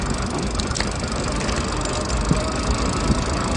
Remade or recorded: recorded